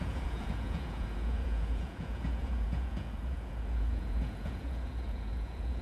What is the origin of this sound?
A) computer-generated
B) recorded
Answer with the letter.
A